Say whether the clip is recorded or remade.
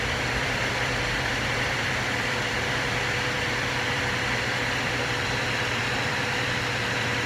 remade